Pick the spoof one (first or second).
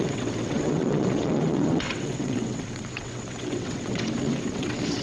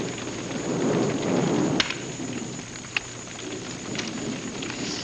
first